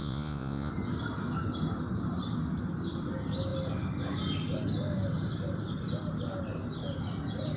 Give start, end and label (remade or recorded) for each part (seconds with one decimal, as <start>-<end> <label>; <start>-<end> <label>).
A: 0.0-0.7 remade; 0.7-7.6 recorded

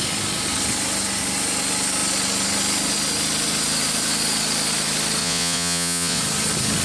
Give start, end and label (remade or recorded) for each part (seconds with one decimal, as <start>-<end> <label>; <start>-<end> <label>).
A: 0.0-5.2 recorded; 5.2-6.2 remade; 6.2-6.8 recorded

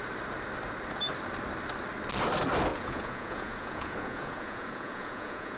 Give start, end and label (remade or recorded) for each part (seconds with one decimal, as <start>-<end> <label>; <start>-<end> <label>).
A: 0.0-2.7 recorded; 2.7-5.6 remade

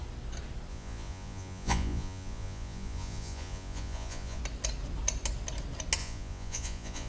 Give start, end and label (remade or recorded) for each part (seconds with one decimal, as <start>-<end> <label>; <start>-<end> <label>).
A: 0.0-0.7 recorded; 0.7-4.4 remade; 4.4-6.0 recorded; 6.0-7.1 remade

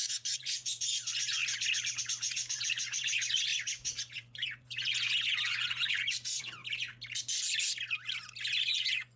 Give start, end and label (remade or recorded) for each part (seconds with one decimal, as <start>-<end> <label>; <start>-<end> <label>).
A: 0.0-1.4 remade; 1.4-2.0 recorded; 2.0-6.6 remade; 6.6-8.5 recorded; 8.5-9.2 remade

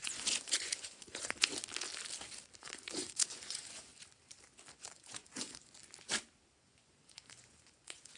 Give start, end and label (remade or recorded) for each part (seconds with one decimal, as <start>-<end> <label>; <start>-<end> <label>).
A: 0.0-1.5 remade; 1.5-2.6 recorded; 2.6-3.9 remade; 3.9-4.7 recorded; 4.7-5.8 remade; 5.8-6.6 recorded; 6.6-8.2 remade

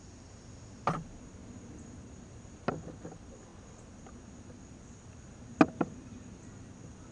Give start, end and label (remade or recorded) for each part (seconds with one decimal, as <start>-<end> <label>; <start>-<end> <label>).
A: 0.0-7.1 recorded